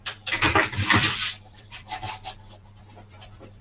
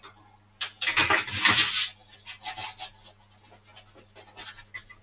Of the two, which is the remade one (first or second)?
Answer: first